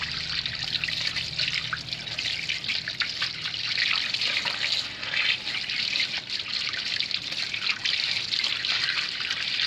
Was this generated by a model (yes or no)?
no